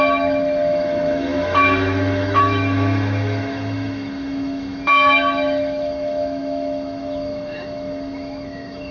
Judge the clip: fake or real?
fake